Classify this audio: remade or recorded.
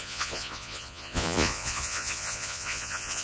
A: remade